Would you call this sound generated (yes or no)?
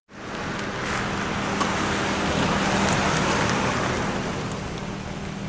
no